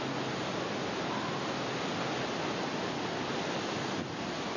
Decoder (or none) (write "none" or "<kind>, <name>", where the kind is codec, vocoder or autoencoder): none